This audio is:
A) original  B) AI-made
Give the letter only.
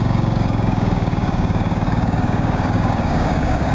B